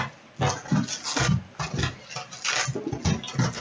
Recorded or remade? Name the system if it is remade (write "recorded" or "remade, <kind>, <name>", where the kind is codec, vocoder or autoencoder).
recorded